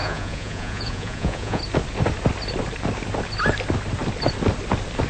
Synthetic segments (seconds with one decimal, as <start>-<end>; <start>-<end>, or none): 0.0-1.6